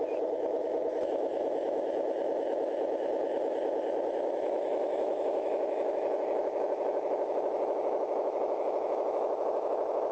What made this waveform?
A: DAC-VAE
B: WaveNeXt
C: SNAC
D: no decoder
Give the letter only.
A